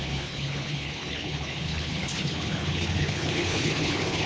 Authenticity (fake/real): fake